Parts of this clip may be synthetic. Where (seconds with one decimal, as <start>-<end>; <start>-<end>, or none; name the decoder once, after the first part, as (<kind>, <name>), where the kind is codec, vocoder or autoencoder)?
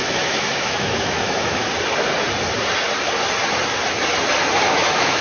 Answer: 0.0-1.6 (autoencoder, DAC-VAE); 4.7-5.2